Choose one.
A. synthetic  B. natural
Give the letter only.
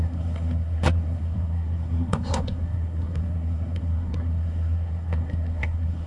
A